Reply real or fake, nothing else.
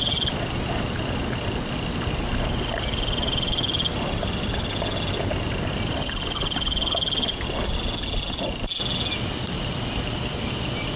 real